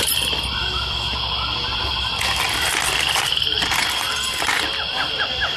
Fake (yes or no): no